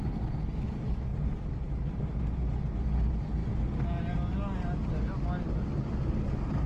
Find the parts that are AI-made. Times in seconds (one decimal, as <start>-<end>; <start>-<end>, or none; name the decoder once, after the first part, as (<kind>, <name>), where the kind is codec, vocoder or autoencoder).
none